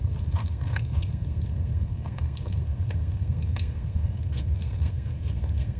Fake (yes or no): yes